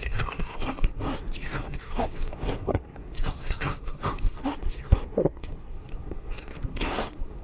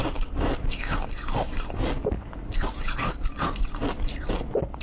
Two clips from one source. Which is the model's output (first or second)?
first